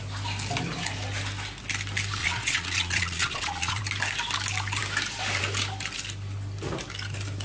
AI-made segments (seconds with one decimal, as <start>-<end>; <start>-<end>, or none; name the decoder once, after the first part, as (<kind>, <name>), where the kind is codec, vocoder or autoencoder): 2.2-3.8 (vocoder, Vocos)